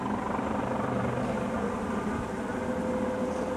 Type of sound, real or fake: real